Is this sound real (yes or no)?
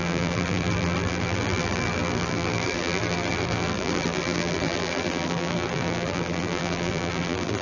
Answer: no